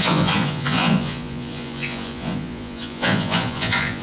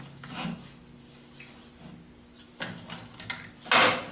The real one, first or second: second